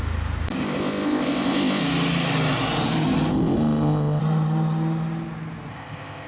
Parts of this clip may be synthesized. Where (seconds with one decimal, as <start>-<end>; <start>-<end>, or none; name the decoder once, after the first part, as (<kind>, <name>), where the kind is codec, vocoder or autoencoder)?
0.6-1.8 (codec, ZipCodec); 3.3-4.2; 5.7-6.3